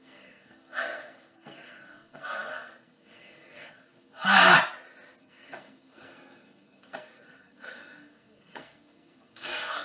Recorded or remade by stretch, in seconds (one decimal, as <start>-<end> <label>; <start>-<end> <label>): 0.0-4.5 remade; 4.5-5.2 recorded; 5.2-9.8 remade